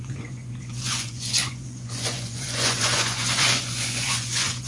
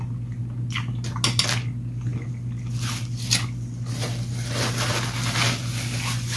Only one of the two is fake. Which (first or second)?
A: first